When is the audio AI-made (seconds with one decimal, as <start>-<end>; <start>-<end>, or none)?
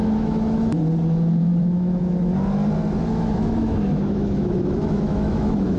0.0-0.8; 1.5-2.3; 3.1-5.8